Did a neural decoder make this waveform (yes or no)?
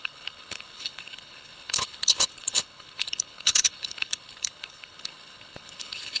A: yes